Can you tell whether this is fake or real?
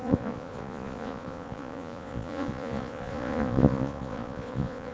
fake